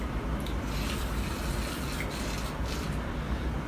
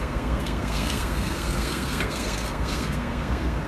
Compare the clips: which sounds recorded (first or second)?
first